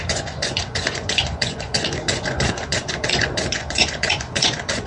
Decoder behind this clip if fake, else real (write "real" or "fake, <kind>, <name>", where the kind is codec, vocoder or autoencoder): fake, vocoder, Vocos